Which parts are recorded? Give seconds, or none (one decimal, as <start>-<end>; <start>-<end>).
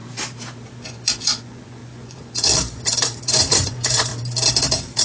0.0-0.9; 4.1-5.0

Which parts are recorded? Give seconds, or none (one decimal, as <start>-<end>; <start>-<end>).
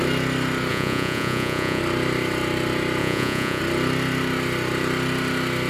0.0-0.7; 1.8-3.0; 3.6-5.7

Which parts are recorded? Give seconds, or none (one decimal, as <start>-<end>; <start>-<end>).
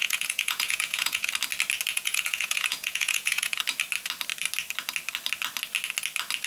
1.3-1.9; 3.6-6.5